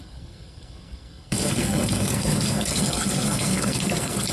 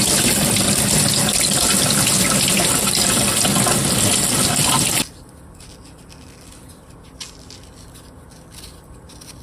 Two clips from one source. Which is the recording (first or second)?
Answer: second